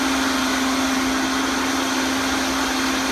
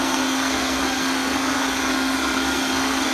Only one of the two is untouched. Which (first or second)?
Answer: first